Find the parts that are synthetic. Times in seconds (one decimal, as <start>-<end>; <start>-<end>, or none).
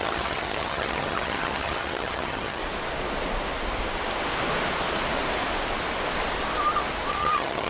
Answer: 0.0-2.6; 7.1-7.7